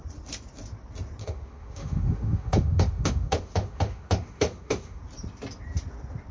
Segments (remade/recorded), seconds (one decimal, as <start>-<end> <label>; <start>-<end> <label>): 0.0-1.2 recorded; 1.2-5.0 remade; 5.0-6.3 recorded